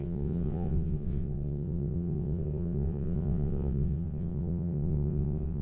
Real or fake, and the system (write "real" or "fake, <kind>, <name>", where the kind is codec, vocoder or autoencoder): fake, vocoder, WaveNeXt